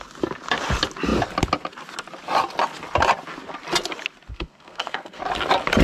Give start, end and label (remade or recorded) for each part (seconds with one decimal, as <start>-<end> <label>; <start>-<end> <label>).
0.0-4.3 recorded; 4.3-5.2 remade; 5.2-5.8 recorded